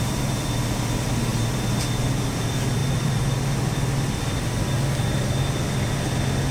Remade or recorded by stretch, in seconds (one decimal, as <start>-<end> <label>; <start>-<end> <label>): 0.0-6.5 recorded